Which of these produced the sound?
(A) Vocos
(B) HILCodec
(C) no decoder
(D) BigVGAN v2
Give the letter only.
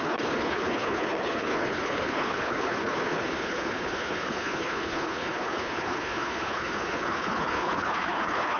B